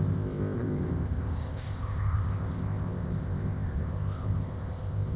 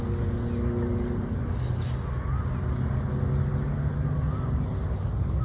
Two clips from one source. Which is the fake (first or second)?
first